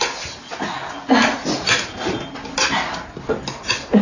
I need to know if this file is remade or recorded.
recorded